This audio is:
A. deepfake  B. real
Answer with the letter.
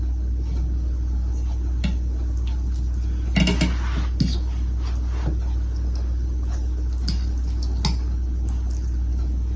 B